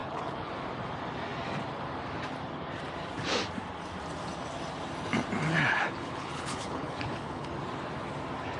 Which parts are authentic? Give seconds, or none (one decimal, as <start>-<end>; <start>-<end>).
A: 0.5-5.7; 7.5-8.6

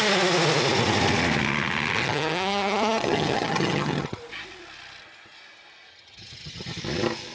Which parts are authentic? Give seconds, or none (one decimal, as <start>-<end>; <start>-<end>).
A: 0.0-2.0; 4.2-5.9; 6.8-7.3

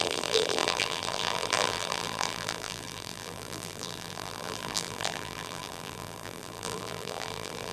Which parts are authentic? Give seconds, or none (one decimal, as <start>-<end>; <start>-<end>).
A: none

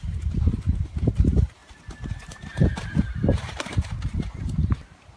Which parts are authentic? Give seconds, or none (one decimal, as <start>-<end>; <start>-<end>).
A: none

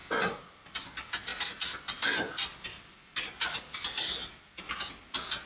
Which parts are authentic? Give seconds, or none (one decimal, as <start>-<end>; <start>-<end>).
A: 0.0-5.5

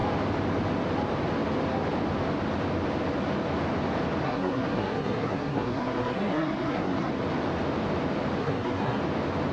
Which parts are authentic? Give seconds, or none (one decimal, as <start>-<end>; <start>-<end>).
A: 0.0-4.2; 7.1-8.4; 9.0-9.5